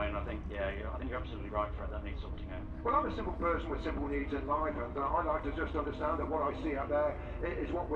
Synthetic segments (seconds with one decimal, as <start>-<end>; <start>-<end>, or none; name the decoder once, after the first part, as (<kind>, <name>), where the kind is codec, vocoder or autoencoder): none